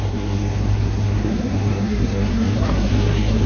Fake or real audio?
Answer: fake